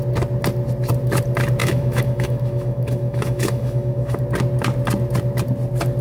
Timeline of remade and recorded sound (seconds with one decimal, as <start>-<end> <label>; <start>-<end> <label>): 0.0-1.6 recorded; 1.6-4.2 remade; 4.2-6.0 recorded